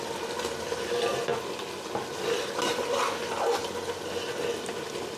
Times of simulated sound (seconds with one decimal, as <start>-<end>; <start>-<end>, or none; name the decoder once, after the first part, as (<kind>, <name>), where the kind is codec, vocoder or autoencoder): none